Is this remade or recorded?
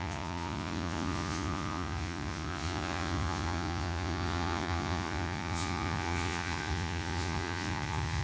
remade